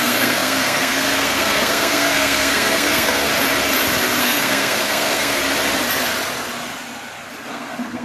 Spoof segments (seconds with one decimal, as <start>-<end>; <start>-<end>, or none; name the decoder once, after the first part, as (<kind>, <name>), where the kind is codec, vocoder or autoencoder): 0.0-3.3 (codec, SNAC); 4.2-5.4; 7.5-8.0